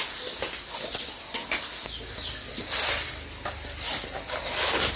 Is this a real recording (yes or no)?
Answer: yes